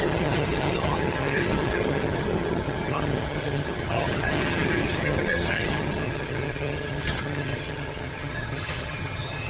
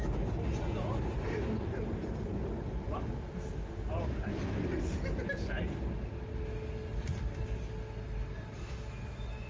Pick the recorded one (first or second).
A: second